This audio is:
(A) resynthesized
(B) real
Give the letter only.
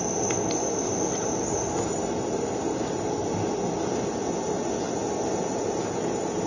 B